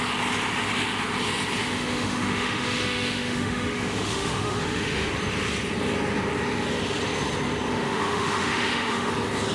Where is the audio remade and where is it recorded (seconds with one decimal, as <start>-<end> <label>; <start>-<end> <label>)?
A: 0.0-1.6 recorded; 1.6-5.1 remade; 5.1-7.7 recorded; 7.7-9.1 remade; 9.1-9.5 recorded